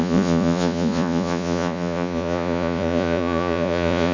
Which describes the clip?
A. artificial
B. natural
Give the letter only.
A